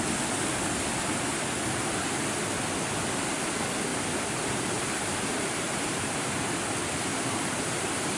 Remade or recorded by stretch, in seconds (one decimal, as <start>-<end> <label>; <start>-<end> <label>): 0.0-3.9 recorded; 3.9-6.5 remade; 6.5-7.1 recorded; 7.1-8.2 remade